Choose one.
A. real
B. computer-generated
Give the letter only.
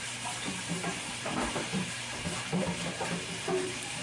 B